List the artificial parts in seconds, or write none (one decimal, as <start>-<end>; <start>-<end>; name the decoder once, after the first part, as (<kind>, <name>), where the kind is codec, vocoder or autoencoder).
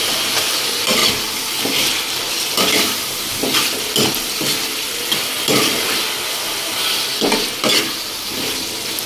none